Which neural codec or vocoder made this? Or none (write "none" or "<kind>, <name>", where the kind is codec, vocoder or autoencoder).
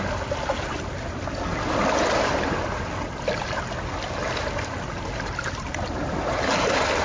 none